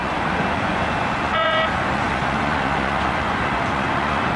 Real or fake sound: fake